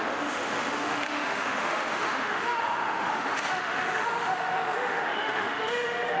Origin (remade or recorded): remade